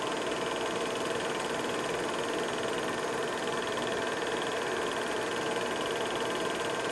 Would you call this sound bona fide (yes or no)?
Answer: yes